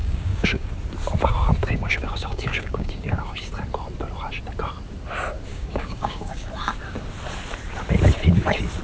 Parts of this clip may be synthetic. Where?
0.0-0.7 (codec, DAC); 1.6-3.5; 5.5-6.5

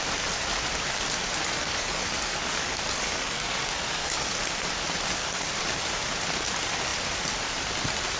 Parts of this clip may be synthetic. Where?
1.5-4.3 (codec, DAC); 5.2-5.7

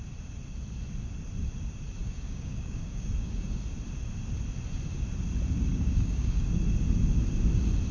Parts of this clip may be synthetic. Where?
2.0-3.5 (codec, DAC); 5.7-6.5

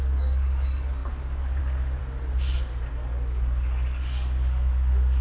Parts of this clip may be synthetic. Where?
0.0-2.0 (codec, DAC); 2.9-5.2